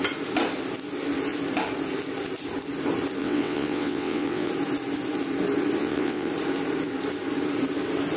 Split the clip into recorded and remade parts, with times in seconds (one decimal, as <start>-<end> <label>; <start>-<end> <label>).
0.0-3.2 recorded; 3.2-4.5 remade; 4.5-5.8 recorded; 5.8-6.3 remade; 6.3-8.2 recorded